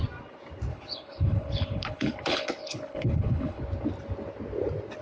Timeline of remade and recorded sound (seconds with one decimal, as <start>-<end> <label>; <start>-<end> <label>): 0.0-0.7 recorded; 0.7-3.6 remade; 3.6-5.0 recorded